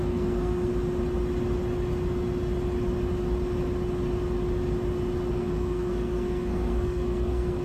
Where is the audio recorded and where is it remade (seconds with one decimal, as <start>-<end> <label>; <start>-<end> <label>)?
0.0-0.7 remade; 0.7-5.3 recorded; 5.3-7.6 remade